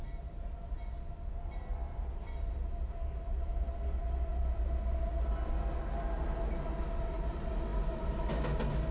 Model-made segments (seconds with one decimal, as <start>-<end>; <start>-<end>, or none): none